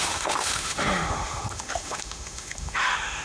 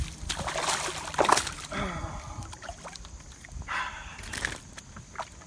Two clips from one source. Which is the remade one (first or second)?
first